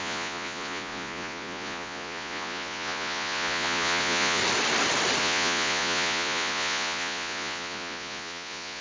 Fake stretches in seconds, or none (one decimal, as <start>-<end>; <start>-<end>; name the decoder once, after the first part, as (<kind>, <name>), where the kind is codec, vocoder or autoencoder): 0.0-4.4 (vocoder, Vocos); 5.2-8.8